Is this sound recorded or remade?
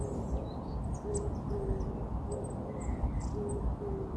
recorded